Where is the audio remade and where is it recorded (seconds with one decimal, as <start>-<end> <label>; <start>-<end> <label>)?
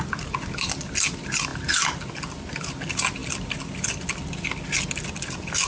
0.0-5.7 recorded